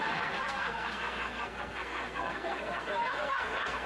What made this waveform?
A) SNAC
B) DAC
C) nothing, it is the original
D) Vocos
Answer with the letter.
A